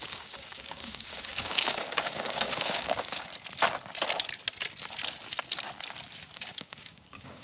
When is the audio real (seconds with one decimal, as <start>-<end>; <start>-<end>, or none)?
3.3-6.4